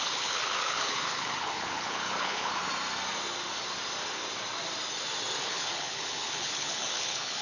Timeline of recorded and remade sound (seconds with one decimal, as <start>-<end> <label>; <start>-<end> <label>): 0.0-2.6 remade; 2.6-5.4 recorded; 5.4-7.4 remade